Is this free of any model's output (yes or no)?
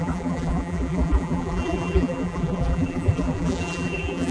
no